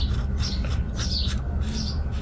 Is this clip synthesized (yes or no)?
no